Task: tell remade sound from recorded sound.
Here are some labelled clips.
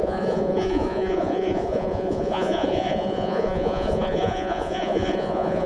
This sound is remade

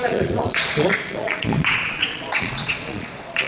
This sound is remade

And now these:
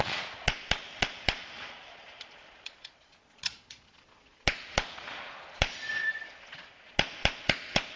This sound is remade